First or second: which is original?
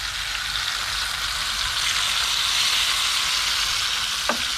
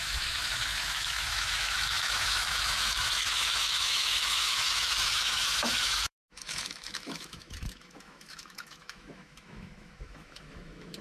first